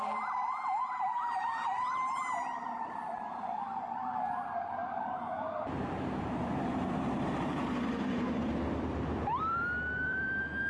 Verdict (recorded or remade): remade